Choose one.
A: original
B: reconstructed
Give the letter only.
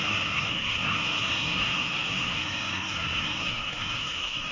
B